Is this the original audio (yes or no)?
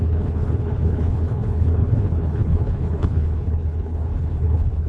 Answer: no